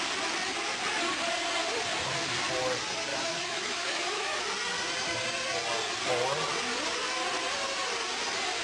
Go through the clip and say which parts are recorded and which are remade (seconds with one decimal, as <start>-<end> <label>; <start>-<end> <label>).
0.0-3.1 recorded; 3.1-4.4 remade; 4.4-8.6 recorded